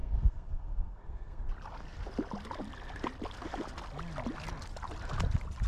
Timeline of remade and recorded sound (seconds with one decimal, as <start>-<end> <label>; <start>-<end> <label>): 0.0-1.4 remade; 1.4-5.7 recorded